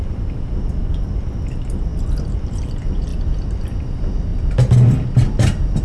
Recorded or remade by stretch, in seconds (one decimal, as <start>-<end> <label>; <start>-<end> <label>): 0.0-3.1 remade; 3.1-3.8 recorded; 3.8-5.8 remade

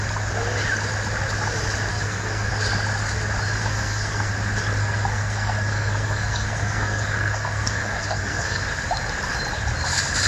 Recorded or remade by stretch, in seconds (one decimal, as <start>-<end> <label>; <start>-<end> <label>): 0.0-1.9 recorded; 1.9-2.5 remade; 2.5-3.6 recorded; 3.6-4.3 remade; 4.3-4.8 recorded; 4.8-8.6 remade; 8.6-10.3 recorded

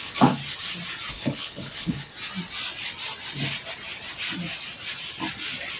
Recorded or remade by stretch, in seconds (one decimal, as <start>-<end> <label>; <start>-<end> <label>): 0.0-0.4 remade; 0.4-1.1 recorded; 1.1-2.1 remade; 2.1-5.8 recorded

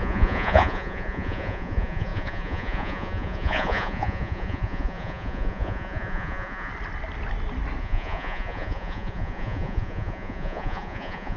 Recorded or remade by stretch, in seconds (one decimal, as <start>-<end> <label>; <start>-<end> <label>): 0.0-6.7 remade; 6.7-7.8 recorded; 7.8-11.4 remade

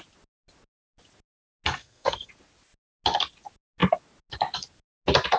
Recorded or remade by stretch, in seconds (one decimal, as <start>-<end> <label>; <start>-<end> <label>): 0.0-1.8 recorded; 1.8-2.3 remade; 2.3-5.4 recorded

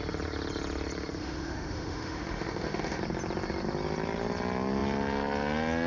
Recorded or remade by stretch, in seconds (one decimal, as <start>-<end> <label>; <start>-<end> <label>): 0.0-1.2 recorded; 1.2-3.0 remade; 3.0-5.9 recorded